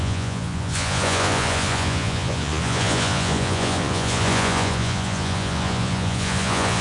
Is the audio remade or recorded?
remade